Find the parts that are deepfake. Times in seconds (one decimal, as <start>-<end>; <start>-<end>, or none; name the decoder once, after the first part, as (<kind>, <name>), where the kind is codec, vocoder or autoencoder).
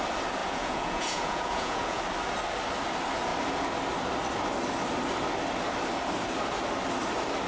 0.4-2.0 (vocoder, Vocos)